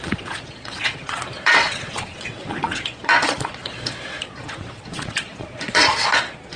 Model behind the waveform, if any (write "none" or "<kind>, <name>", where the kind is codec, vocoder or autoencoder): vocoder, Vocos